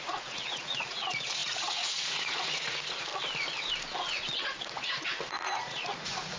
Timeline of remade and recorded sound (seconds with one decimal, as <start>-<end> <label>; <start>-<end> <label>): 0.0-3.1 remade; 3.1-4.4 recorded; 4.4-6.4 remade